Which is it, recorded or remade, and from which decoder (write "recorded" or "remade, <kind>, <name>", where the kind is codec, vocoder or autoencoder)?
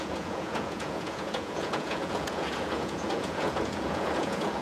remade, vocoder, Vocos